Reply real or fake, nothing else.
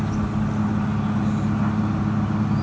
real